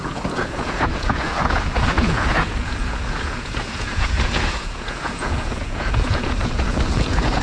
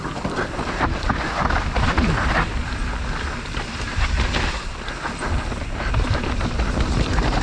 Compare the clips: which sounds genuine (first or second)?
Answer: second